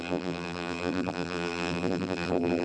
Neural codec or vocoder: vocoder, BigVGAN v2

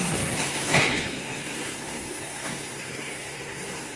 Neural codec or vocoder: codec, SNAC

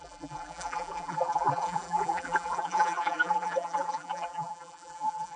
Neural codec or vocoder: vocoder, BigVGAN v2